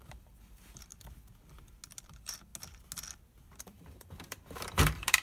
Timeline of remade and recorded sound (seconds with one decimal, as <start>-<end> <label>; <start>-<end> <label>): 0.0-0.9 remade; 0.9-2.1 recorded; 2.1-2.5 remade; 2.5-3.6 recorded; 3.6-5.2 remade

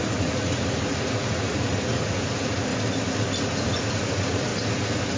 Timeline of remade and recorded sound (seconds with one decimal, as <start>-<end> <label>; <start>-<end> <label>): 0.0-2.7 remade; 2.7-3.4 recorded; 3.4-4.5 remade; 4.5-5.2 recorded